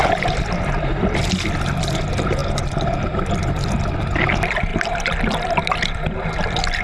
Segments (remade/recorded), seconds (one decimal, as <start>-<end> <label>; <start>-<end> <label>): 0.0-6.8 remade